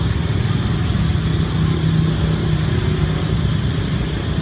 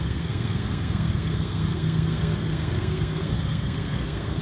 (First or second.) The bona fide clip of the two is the first